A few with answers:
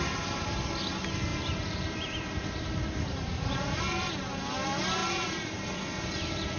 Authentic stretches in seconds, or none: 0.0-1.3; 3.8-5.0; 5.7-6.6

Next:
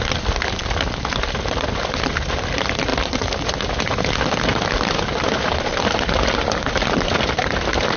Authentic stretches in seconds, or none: 0.0-8.0